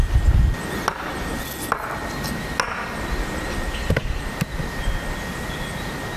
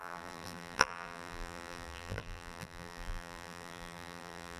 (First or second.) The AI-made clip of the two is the second